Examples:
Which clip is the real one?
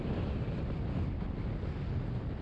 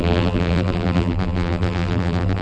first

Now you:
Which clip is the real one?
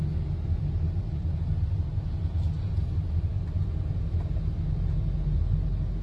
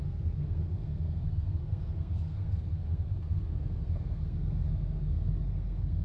first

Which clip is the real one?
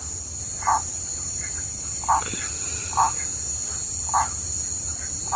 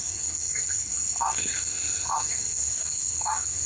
first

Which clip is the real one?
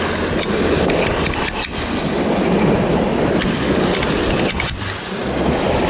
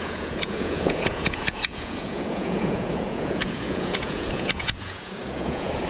first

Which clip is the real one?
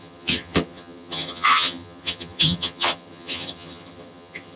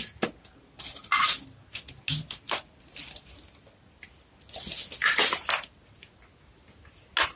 second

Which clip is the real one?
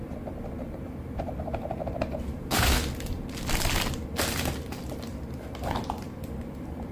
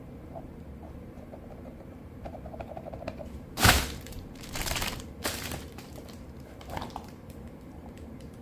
first